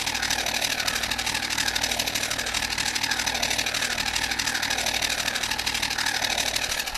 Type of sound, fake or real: real